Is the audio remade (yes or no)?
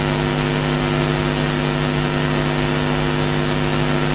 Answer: no